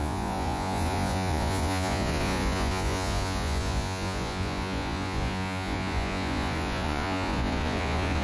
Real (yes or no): no